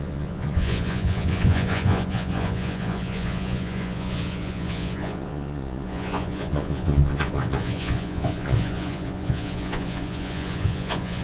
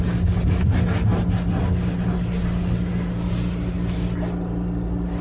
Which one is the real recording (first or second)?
second